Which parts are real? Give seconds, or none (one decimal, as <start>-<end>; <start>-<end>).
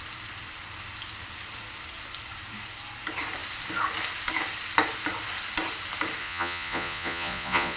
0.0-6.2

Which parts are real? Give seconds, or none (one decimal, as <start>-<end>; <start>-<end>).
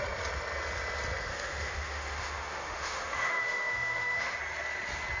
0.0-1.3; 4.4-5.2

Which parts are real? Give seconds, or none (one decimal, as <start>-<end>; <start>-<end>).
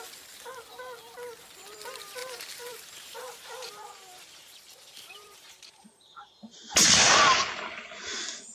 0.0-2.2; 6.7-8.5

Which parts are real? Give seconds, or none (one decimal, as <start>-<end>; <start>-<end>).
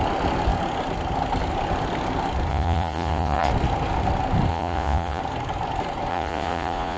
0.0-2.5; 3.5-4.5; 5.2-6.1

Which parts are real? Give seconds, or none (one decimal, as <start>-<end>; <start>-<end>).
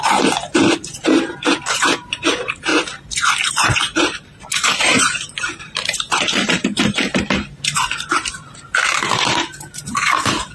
2.7-3.5